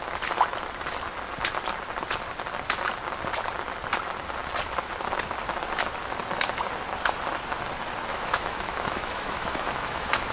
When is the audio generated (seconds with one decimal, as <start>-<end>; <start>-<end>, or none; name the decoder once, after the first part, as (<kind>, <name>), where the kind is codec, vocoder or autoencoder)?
8.1-10.3 (autoencoder, DAC-VAE)